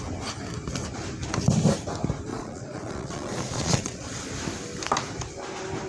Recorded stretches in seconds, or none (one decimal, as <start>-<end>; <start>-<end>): 0.0-2.3; 4.3-5.9